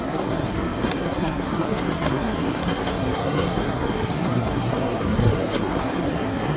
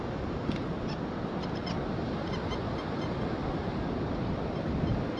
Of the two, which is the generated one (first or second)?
first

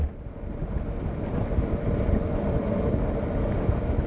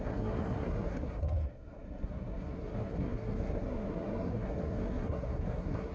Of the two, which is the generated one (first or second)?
second